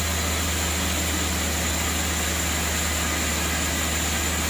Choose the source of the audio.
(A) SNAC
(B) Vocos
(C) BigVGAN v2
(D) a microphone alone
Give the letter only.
D